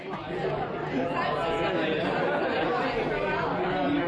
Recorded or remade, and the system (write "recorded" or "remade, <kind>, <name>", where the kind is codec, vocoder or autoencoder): recorded